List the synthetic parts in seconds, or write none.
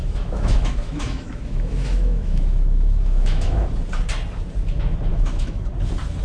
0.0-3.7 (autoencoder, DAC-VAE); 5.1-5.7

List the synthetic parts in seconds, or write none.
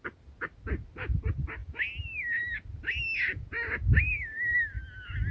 none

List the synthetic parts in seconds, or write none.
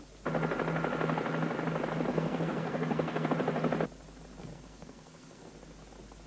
2.1-3.3 (codec, SNAC); 4.4-5.5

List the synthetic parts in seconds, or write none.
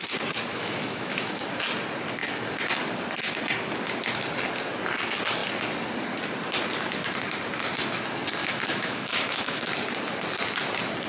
0.5-1.4 (autoencoder, DAC-VAE); 8.4-9.7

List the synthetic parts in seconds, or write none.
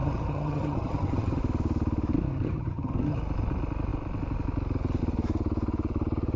0.0-1.4 (vocoder, HiFi-GAN); 2.3-3.2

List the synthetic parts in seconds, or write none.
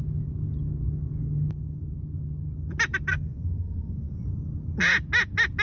3.1-4.2 (codec, SNAC)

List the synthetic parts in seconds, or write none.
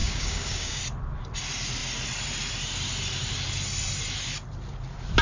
0.0-0.8 (codec, DAC)